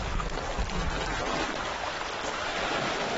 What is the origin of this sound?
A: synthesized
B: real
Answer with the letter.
B